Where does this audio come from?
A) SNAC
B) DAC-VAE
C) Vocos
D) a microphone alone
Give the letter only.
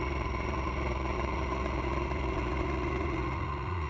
C